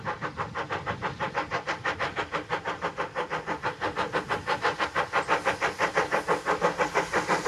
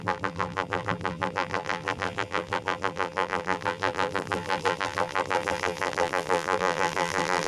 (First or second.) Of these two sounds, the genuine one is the first